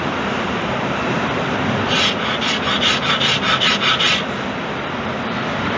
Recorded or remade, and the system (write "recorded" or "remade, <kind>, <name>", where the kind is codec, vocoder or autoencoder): recorded